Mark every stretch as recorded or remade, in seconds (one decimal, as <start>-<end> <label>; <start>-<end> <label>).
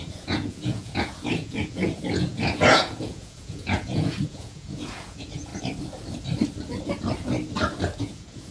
0.0-5.5 remade; 5.5-8.0 recorded; 8.0-8.5 remade